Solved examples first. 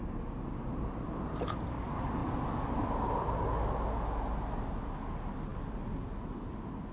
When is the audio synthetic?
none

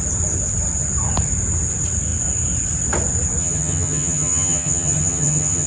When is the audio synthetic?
3.4-5.7

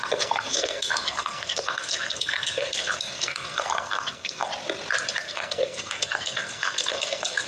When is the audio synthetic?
0.0-4.5; 5.2-7.5

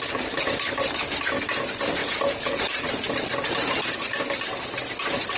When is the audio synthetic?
none

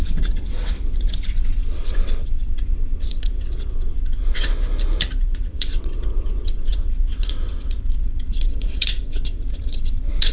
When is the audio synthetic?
0.0-4.5; 5.2-10.3

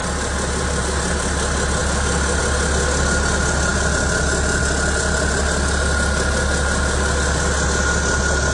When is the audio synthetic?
none

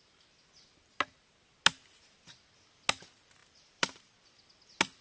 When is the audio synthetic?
3.4-4.0

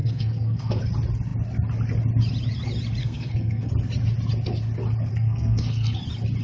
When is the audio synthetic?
0.0-0.8; 3.0-3.7; 5.1-6.0